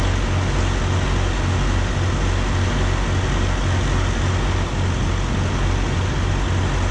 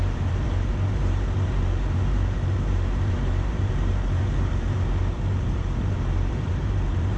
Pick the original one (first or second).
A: first